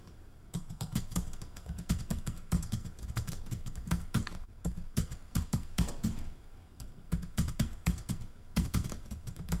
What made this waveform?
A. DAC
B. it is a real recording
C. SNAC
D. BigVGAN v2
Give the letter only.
C